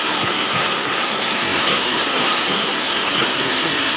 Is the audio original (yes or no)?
no